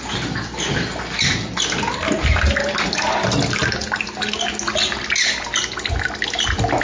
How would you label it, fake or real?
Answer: real